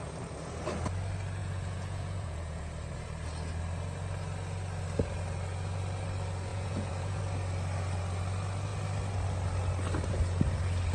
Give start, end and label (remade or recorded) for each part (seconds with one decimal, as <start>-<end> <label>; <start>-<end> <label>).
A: 0.0-1.4 recorded; 1.4-2.6 remade; 2.6-6.5 recorded; 6.5-7.2 remade; 7.2-10.9 recorded